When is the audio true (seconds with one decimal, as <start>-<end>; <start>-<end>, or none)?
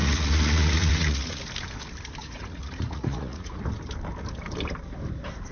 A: 1.4-2.2; 3.6-5.5